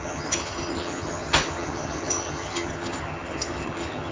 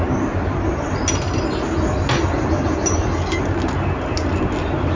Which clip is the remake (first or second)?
first